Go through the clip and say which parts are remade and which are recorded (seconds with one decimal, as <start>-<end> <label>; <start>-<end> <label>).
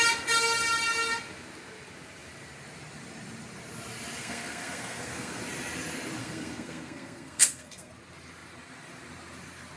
0.0-4.2 recorded; 4.2-5.4 remade; 5.4-6.2 recorded; 6.2-7.9 remade; 7.9-9.8 recorded